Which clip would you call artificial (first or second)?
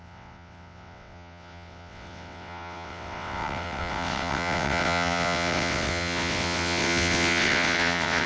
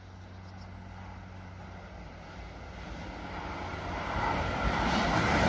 first